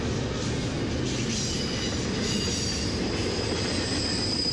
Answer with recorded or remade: recorded